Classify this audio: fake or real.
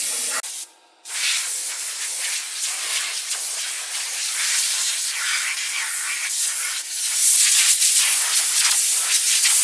real